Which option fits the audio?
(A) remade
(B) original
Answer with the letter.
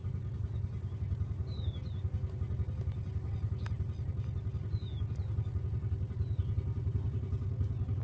B